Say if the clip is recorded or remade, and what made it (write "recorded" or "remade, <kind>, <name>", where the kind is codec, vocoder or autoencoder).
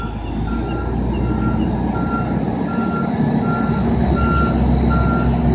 recorded